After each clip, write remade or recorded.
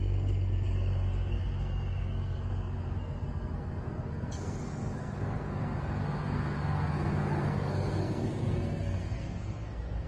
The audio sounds remade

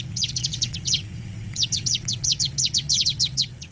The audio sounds remade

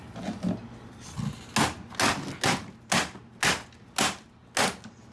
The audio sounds recorded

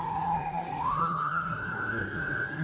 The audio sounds remade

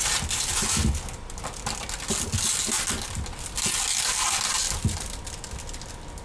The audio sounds recorded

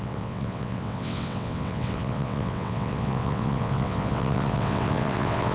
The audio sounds remade